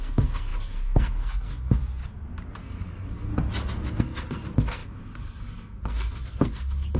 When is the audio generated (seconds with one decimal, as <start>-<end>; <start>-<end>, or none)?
0.0-2.0; 2.6-3.3; 4.0-7.0